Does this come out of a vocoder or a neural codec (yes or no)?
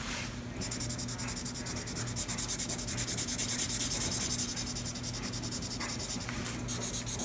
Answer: no